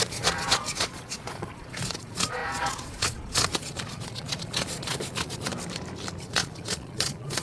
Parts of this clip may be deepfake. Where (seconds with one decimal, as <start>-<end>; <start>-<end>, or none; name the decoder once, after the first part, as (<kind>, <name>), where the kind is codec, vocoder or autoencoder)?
0.0-5.5 (vocoder, Vocos); 6.2-7.4

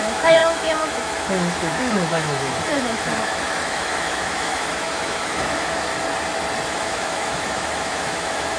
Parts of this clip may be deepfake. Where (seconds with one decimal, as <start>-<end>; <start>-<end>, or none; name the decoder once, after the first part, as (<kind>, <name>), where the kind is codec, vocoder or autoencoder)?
0.0-5.9 (autoencoder, DAC-VAE); 6.7-8.6

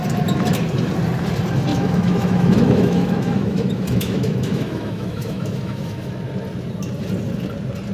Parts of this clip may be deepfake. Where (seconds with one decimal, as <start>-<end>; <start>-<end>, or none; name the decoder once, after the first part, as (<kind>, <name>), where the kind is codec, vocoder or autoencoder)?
1.7-6.1 (autoencoder, DAC-VAE)

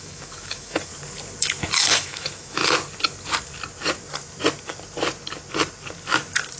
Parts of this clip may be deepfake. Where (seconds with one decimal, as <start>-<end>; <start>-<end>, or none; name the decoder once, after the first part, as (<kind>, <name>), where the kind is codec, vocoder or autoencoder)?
0.0-0.9 (autoencoder, DAC-VAE); 1.9-2.6

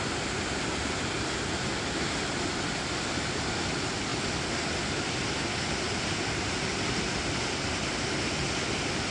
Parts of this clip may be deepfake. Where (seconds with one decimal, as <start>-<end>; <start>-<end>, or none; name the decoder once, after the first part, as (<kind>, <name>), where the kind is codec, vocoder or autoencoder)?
none

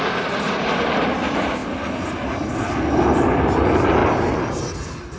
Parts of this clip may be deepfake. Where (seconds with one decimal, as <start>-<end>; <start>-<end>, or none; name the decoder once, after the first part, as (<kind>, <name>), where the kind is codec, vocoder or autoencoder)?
none

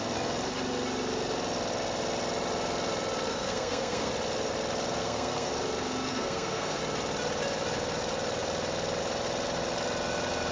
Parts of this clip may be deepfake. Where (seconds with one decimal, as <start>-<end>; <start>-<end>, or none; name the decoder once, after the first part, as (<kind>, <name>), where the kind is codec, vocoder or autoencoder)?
3.3-4.1 (codec, SNAC); 5.0-5.5; 6.1-6.8

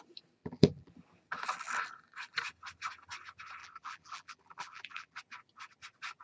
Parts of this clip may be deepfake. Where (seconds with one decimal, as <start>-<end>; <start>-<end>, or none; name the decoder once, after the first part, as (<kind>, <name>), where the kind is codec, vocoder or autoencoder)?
0.4-0.9 (vocoder, BigVGAN v2); 3.6-5.2